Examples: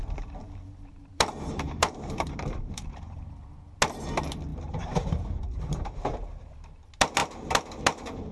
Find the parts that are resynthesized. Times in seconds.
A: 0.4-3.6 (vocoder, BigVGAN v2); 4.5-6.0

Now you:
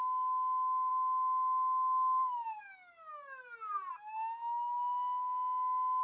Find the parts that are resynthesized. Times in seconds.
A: none

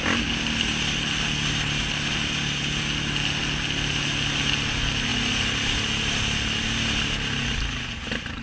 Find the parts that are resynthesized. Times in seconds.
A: none

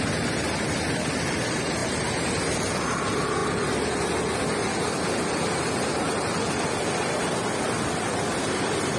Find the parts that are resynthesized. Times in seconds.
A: none

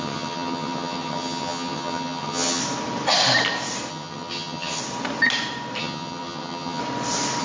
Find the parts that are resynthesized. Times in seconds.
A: 0.0-2.6 (vocoder, HiFi-GAN); 3.9-4.8; 5.8-6.8